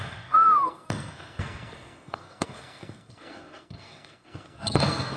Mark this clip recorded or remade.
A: remade